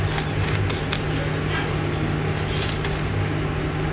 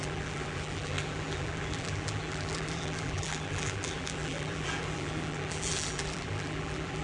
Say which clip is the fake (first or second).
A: second